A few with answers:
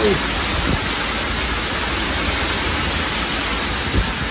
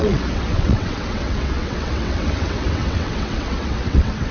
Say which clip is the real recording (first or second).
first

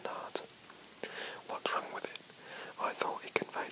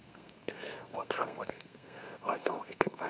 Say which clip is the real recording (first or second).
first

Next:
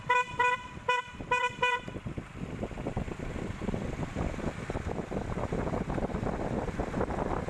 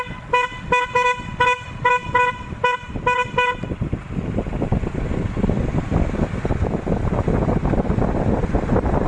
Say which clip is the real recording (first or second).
second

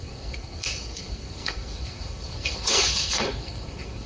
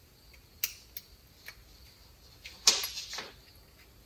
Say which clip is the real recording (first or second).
second